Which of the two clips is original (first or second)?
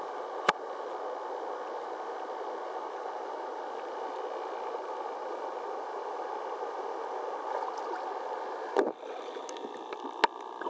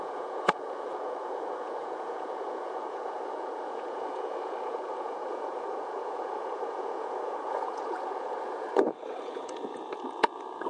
first